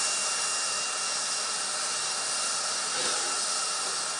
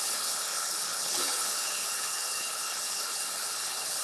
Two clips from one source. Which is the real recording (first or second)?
first